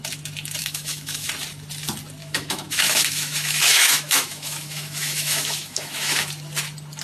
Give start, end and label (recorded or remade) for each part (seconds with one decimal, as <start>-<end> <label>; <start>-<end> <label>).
0.0-0.6 recorded; 0.6-1.3 remade; 1.3-2.2 recorded; 2.2-6.3 remade; 6.3-7.0 recorded